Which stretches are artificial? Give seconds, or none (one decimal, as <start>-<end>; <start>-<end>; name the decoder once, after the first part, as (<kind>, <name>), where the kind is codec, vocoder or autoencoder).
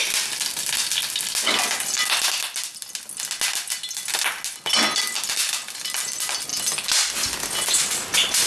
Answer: none